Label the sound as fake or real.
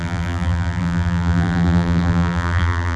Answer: fake